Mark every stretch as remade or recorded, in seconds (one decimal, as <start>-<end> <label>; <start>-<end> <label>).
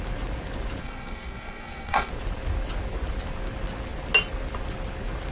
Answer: 0.0-0.8 recorded; 0.8-2.1 remade; 2.1-5.3 recorded